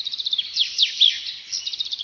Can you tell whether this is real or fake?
real